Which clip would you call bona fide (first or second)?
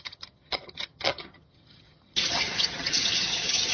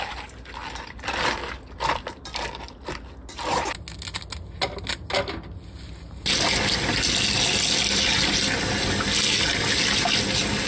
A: second